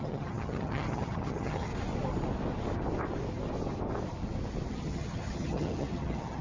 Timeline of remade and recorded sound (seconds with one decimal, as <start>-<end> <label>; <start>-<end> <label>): 0.0-1.7 remade; 1.7-4.7 recorded; 4.7-6.4 remade